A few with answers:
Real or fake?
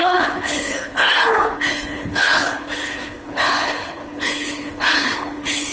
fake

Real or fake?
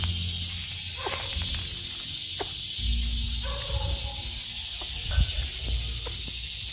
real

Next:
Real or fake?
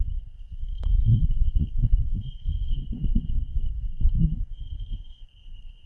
fake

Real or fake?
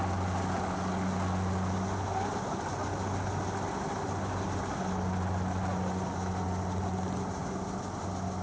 real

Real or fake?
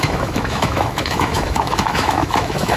fake